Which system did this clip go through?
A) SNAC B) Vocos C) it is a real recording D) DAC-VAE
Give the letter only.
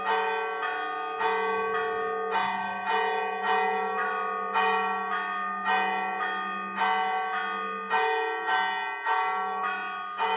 C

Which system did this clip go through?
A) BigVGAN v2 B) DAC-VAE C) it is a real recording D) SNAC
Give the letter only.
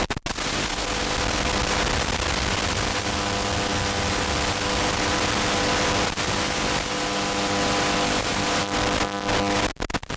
C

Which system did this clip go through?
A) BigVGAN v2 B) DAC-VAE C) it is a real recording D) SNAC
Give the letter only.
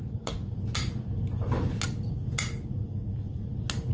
C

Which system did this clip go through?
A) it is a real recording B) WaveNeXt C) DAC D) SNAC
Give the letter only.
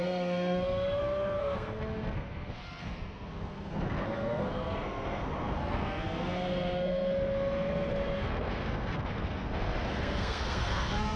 D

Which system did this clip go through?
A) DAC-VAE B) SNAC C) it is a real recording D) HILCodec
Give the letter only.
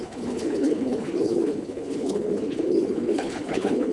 D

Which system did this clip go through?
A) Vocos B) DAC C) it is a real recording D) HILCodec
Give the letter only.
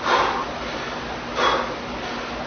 C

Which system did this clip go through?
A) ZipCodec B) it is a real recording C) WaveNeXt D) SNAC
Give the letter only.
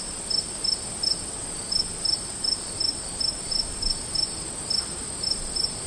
B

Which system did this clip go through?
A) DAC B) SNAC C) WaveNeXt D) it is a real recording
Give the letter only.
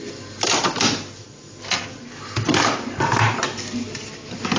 D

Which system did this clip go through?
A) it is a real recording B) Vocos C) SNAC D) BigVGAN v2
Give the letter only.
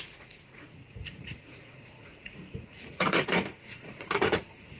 B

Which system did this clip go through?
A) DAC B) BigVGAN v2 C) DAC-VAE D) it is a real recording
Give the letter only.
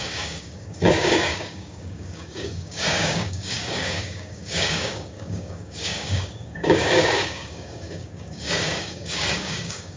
A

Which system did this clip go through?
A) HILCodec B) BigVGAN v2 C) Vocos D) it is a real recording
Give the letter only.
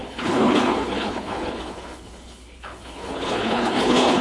A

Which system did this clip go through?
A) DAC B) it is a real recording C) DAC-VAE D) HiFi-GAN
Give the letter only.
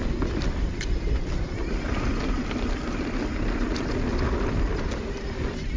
B